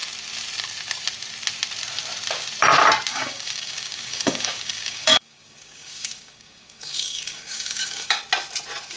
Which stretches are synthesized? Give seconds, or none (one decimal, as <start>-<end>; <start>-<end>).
3.1-8.2